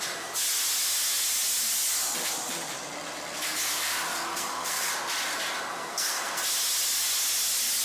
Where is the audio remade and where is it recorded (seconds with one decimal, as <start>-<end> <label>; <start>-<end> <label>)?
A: 0.0-4.3 recorded; 4.3-4.9 remade; 4.9-5.7 recorded; 5.7-6.4 remade; 6.4-7.8 recorded